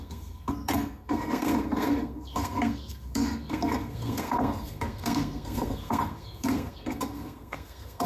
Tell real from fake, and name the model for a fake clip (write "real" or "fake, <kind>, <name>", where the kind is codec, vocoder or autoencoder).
fake, codec, SNAC